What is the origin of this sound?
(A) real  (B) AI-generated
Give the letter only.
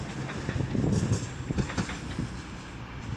A